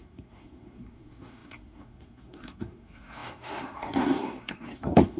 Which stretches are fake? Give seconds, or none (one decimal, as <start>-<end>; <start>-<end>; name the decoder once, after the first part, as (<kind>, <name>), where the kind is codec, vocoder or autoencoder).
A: 0.0-5.2 (codec, SNAC)